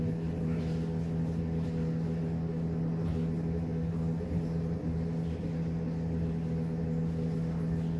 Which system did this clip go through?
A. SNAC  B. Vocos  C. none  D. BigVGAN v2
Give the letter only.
C